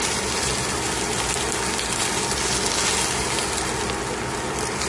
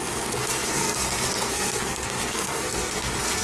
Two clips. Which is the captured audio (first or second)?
first